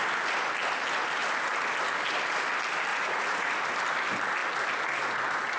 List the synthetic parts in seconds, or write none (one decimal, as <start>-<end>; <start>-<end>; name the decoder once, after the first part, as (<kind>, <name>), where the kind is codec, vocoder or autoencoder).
2.9-3.5 (vocoder, Vocos)